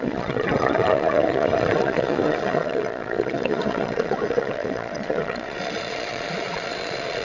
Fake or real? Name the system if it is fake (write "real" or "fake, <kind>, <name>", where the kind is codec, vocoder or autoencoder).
fake, vocoder, Vocos